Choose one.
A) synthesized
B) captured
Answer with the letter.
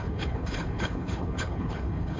A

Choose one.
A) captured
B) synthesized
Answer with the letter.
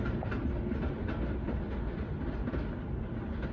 A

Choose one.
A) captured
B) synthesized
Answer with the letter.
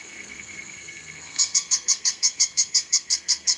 B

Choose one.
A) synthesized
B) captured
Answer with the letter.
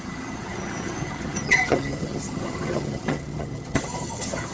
A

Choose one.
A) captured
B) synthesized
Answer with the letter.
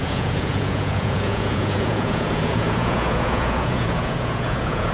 B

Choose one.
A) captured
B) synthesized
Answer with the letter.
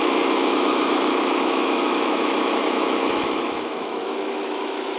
B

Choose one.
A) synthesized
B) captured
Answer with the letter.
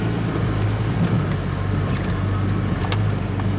B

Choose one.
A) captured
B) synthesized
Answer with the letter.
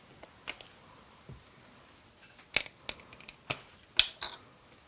A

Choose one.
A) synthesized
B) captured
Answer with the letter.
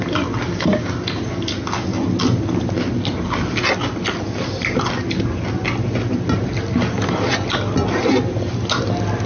B